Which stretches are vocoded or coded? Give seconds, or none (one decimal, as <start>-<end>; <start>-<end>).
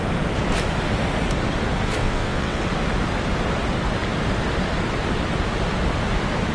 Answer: 2.0-2.6